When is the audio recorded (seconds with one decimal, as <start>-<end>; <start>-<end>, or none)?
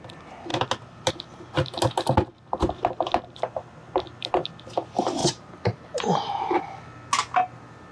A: 0.0-5.2; 6.6-7.9